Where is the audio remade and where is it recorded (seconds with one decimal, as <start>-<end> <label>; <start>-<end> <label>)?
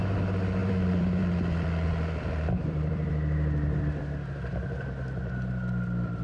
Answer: 0.0-0.6 recorded; 0.6-4.3 remade; 4.3-6.2 recorded